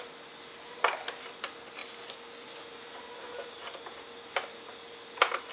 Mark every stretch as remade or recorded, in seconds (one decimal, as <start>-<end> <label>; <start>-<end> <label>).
0.0-5.5 recorded